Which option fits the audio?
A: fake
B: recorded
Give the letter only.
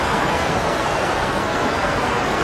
A